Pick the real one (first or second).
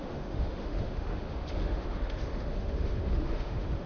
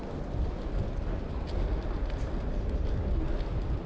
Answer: second